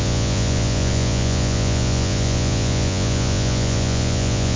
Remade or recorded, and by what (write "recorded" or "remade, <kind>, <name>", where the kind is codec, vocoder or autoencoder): remade, vocoder, Vocos